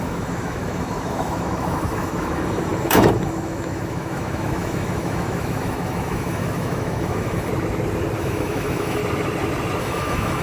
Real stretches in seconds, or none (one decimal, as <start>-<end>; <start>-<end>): 7.5-8.2; 9.0-9.8